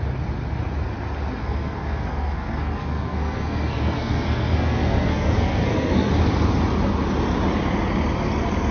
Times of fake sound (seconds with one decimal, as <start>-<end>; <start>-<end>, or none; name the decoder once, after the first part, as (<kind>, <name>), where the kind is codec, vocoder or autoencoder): 1.4-6.1 (codec, SNAC)